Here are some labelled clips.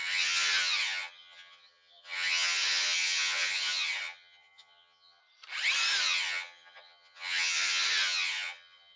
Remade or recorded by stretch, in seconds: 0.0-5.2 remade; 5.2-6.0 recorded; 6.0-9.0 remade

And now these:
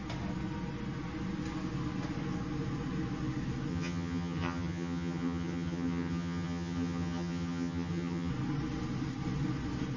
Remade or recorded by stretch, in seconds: 0.0-3.7 recorded; 3.7-8.3 remade; 8.3-10.0 recorded

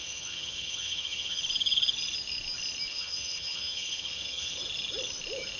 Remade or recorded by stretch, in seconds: 0.0-1.4 remade; 1.4-2.9 recorded; 2.9-4.6 remade; 4.6-5.6 recorded

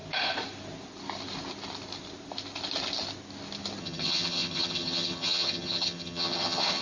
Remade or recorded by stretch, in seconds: 0.0-3.8 recorded; 3.8-6.8 remade

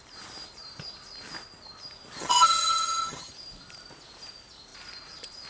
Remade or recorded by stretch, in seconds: 0.0-2.2 recorded; 2.2-3.3 remade; 3.3-5.5 recorded

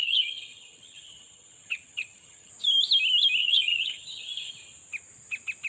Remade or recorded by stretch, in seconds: 0.0-2.5 remade; 2.5-3.4 recorded; 3.4-4.5 remade; 4.5-5.7 recorded